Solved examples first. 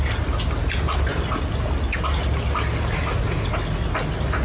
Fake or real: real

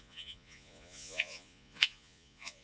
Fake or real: fake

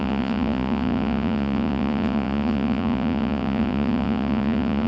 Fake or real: fake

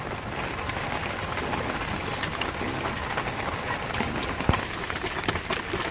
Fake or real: real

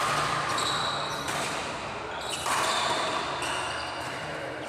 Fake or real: real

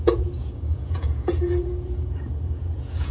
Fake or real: fake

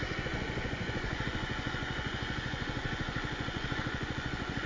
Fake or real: fake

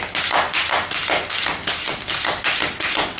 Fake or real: real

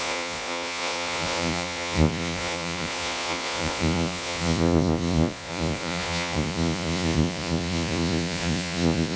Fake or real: fake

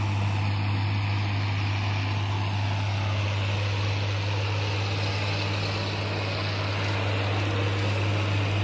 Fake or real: real